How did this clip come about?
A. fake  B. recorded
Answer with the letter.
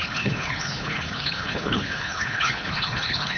A